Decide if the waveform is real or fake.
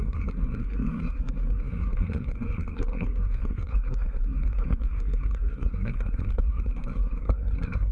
fake